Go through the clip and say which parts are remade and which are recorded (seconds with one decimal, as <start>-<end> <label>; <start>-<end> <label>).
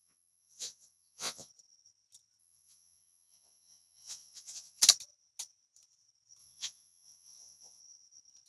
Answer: 0.0-1.5 remade; 1.5-2.4 recorded; 2.4-4.8 remade; 4.8-6.4 recorded; 6.4-7.8 remade; 7.8-8.5 recorded